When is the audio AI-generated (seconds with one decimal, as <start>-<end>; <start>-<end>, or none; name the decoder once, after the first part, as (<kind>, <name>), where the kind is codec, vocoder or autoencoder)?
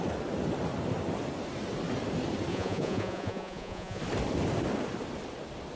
2.5-4.0 (vocoder, Vocos)